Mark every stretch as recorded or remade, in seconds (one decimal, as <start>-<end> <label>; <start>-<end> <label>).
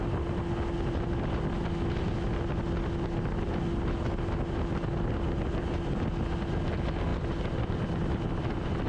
0.0-8.9 recorded